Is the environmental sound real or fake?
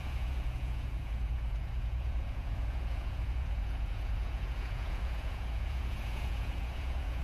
fake